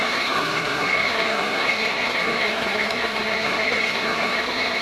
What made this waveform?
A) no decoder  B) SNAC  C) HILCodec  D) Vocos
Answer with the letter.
B